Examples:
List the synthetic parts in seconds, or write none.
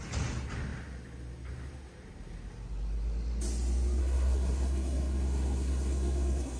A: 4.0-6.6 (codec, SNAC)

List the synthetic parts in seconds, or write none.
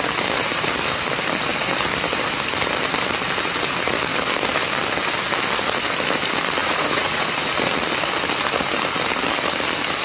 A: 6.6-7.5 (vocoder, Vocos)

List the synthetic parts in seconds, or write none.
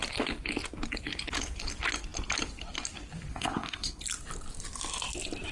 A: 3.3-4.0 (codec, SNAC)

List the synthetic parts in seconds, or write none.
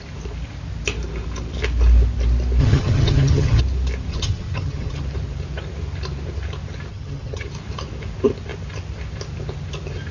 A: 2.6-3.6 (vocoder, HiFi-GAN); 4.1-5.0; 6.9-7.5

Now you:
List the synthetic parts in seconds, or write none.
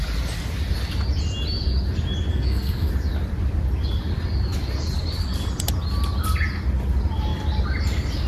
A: 2.3-2.9 (codec, SNAC)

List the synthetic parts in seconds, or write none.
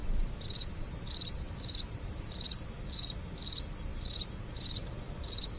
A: 0.0-2.7 (vocoder, BigVGAN v2); 3.9-4.9